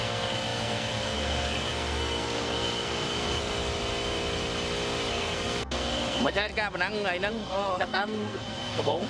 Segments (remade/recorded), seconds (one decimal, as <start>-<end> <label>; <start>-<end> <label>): 0.0-3.5 remade; 3.5-5.1 recorded; 5.1-6.5 remade; 6.5-7.3 recorded; 7.3-9.1 remade